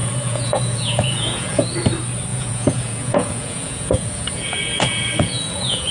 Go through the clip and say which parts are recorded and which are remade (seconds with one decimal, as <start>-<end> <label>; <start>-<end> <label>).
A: 0.0-1.6 remade; 1.6-2.3 recorded; 2.3-5.9 remade